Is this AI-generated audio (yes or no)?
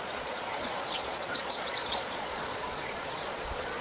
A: yes